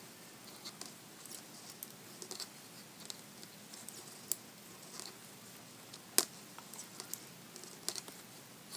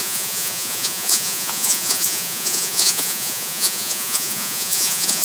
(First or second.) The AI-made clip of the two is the second